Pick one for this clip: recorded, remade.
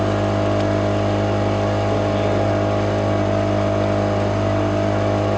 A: recorded